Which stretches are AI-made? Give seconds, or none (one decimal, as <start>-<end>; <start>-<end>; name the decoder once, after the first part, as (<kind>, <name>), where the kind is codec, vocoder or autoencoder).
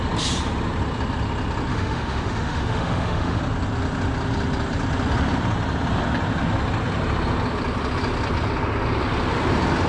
1.7-3.4 (autoencoder, DAC-VAE)